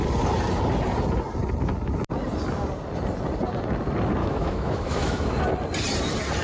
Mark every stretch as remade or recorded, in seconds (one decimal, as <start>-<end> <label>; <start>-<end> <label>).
0.0-4.2 recorded; 4.2-5.4 remade; 5.4-6.4 recorded